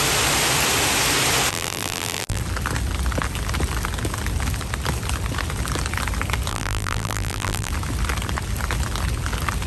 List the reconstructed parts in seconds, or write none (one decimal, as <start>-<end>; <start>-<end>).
1.5-2.4; 6.5-7.7